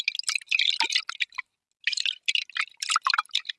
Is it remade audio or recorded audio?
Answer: recorded